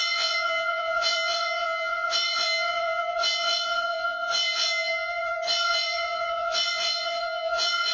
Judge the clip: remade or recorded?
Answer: remade